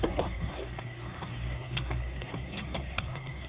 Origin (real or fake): fake